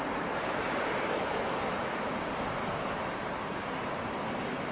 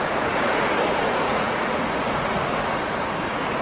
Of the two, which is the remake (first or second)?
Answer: second